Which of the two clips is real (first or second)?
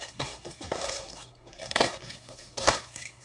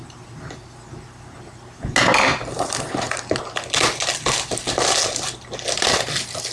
second